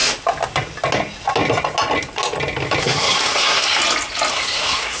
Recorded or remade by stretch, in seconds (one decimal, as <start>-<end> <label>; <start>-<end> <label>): 0.0-2.8 recorded; 2.8-3.8 remade; 3.8-4.3 recorded; 4.3-5.0 remade